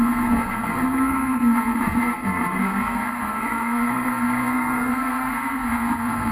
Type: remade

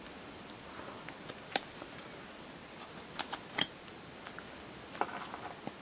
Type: recorded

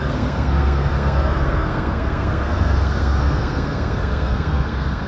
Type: remade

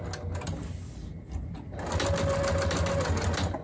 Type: recorded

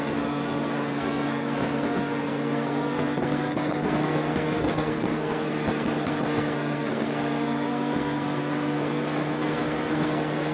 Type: remade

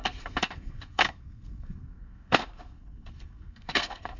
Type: remade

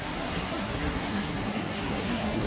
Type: remade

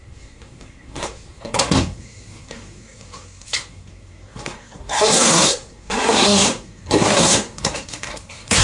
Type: remade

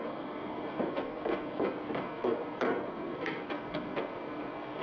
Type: remade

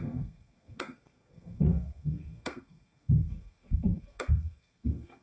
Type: remade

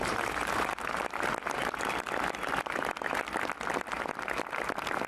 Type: recorded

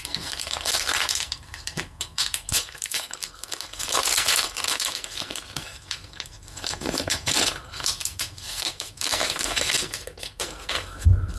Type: remade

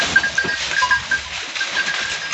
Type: recorded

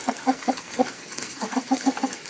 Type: remade